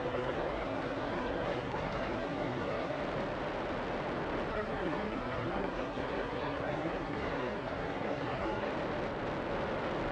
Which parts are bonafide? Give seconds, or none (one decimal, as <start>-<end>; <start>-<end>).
3.0-4.5; 8.7-10.1